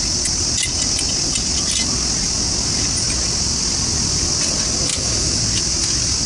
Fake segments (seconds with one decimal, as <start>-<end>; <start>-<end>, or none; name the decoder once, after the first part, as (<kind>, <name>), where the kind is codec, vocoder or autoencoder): 4.9-5.4 (autoencoder, DAC-VAE)